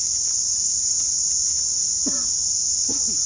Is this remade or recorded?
recorded